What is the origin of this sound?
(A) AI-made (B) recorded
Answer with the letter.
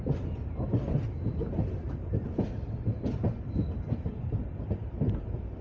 B